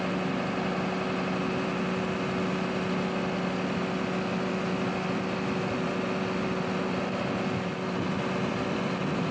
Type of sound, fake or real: real